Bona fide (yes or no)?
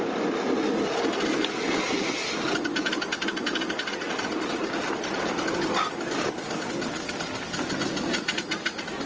yes